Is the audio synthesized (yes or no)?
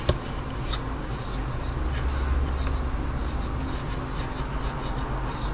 no